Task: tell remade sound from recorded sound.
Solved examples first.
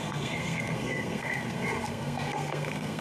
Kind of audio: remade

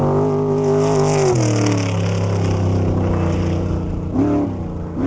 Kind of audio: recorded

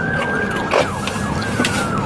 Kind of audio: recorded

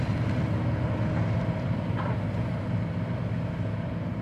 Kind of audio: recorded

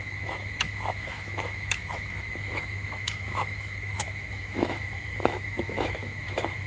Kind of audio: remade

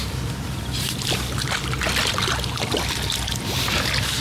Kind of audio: recorded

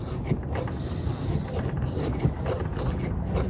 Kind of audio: recorded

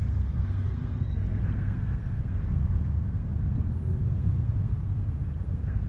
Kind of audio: remade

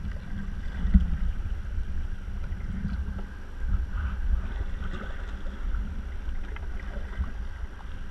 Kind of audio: recorded